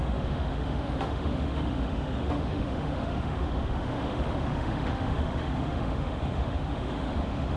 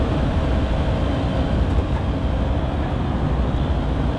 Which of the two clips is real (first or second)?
second